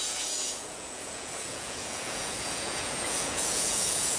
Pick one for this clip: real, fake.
fake